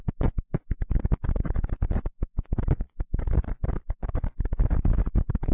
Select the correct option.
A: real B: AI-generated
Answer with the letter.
A